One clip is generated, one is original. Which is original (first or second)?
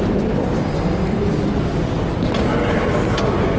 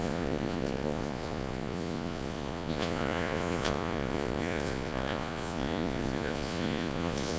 first